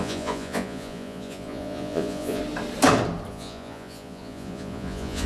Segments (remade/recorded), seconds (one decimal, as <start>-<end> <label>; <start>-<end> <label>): 0.0-2.4 remade; 2.4-3.3 recorded; 3.3-5.3 remade